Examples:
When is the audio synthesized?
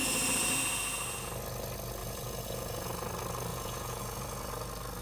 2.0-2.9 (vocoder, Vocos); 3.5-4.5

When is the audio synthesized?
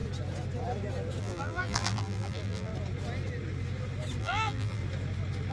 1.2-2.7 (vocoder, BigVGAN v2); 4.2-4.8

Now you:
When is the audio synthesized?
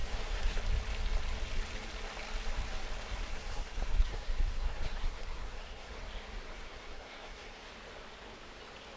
0.0-0.6 (codec, SNAC); 3.3-5.9; 6.5-7.7